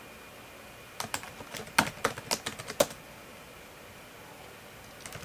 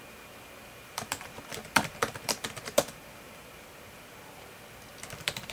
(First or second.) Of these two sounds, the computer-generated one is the second